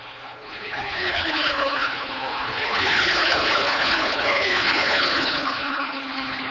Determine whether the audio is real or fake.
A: fake